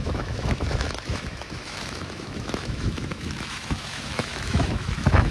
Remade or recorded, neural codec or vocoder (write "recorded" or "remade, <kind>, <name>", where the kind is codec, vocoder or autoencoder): remade, autoencoder, DAC-VAE